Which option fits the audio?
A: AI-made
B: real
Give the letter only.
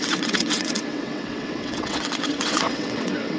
A